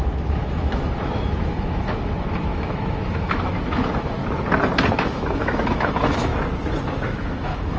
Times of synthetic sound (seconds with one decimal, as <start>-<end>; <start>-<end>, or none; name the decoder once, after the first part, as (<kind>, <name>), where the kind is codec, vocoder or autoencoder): 0.0-4.2 (autoencoder, DAC-VAE); 4.9-6.3; 7.1-7.8